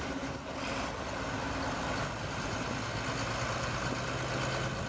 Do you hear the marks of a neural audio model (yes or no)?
no